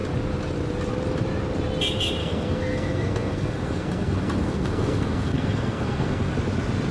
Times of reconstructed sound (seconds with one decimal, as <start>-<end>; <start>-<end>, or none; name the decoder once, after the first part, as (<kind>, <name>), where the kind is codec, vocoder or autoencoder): 2.2-6.3 (codec, SNAC)